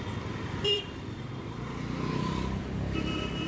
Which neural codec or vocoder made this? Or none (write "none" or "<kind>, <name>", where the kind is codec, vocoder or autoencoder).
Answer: vocoder, BigVGAN v2